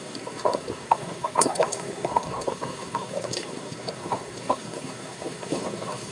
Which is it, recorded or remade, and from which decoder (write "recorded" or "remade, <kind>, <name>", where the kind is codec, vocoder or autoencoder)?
remade, codec, SNAC